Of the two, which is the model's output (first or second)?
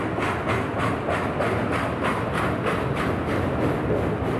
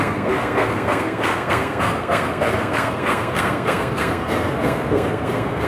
second